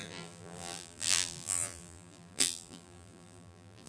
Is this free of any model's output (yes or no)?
no